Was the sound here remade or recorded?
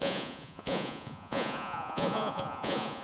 remade